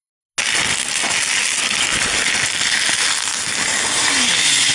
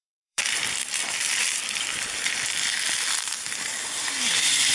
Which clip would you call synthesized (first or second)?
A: second